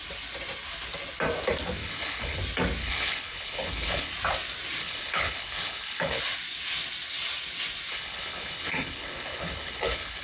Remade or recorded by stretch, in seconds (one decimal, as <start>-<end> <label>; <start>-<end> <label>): 0.0-1.8 recorded; 1.8-2.4 remade; 2.4-2.8 recorded; 2.8-4.1 remade; 4.1-4.8 recorded; 4.8-6.2 remade; 6.2-7.9 recorded; 7.9-10.2 remade